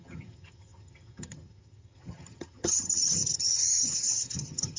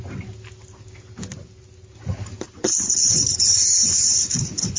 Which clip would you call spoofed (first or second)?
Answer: first